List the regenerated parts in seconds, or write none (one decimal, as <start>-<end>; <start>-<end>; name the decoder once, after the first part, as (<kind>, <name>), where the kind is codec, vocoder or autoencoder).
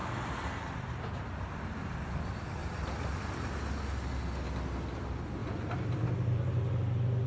0.0-1.0 (vocoder, BigVGAN v2); 2.6-3.2; 5.4-6.0